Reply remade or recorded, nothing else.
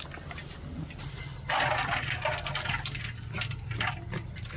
recorded